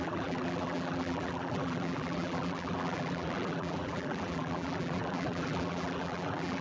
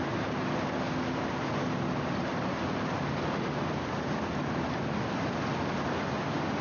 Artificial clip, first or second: first